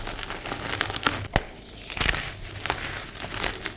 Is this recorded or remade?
recorded